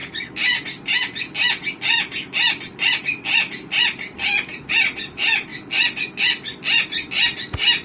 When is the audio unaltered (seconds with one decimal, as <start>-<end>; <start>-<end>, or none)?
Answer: 0.0-7.8